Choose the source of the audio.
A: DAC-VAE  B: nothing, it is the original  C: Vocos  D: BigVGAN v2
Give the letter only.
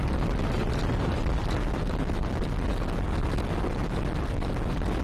B